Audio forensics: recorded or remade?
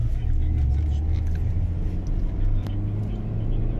recorded